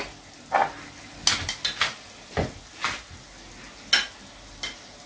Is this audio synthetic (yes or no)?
no